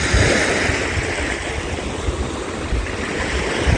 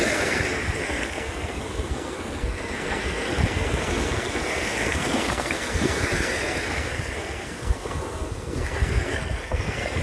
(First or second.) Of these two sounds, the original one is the first